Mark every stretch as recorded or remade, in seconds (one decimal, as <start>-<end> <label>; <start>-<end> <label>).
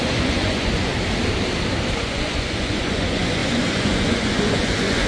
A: 0.0-0.9 remade; 0.9-1.9 recorded; 1.9-5.1 remade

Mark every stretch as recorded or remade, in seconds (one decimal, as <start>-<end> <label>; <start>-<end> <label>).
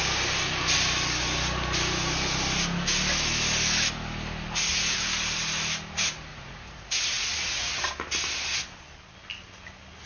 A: 0.0-6.3 recorded; 6.3-7.7 remade; 7.7-10.1 recorded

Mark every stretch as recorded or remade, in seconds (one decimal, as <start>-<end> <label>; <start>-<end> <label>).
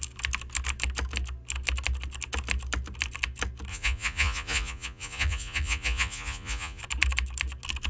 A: 0.0-3.7 recorded; 3.7-6.8 remade; 6.8-7.9 recorded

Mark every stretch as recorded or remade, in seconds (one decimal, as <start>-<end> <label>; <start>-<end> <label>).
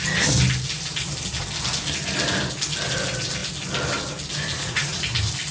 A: 0.0-4.5 recorded; 4.5-5.0 remade; 5.0-5.5 recorded